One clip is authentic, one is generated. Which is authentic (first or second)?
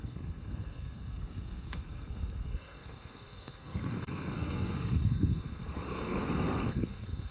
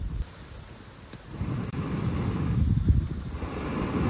second